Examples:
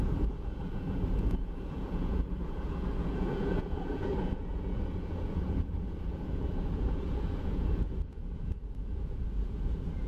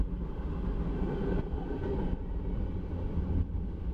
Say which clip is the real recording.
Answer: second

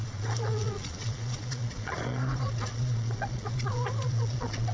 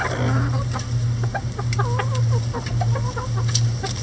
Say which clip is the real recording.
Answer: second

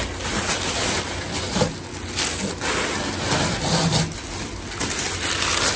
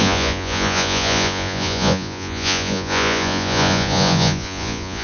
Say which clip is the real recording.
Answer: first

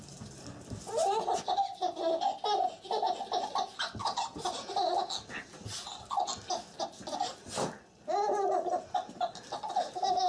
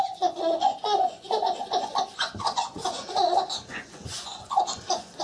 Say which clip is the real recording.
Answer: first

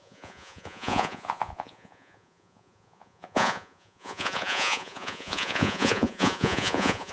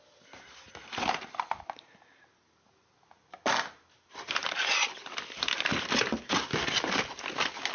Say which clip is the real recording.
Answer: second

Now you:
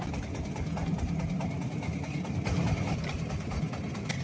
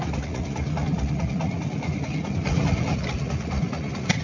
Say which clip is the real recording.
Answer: first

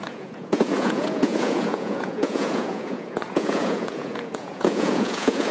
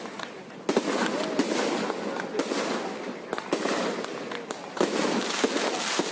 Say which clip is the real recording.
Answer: second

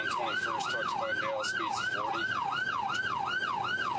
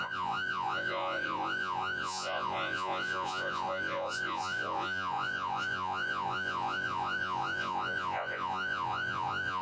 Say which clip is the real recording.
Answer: first